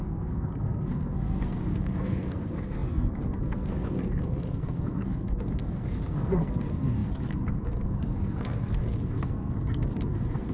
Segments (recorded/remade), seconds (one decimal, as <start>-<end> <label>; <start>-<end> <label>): 0.0-10.5 remade